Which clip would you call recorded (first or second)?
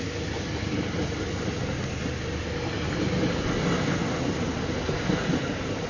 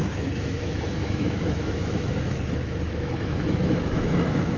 first